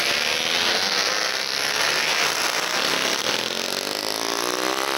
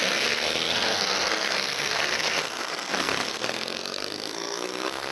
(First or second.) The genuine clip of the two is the first